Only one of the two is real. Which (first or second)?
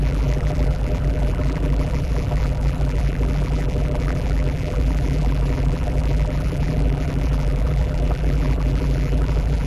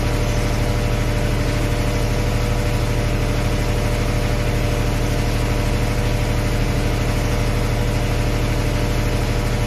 second